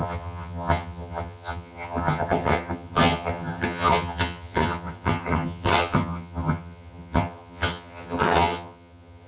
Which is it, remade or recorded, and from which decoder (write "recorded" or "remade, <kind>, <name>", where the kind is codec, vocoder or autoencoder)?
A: remade, vocoder, HiFi-GAN